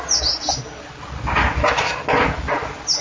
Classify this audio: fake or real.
real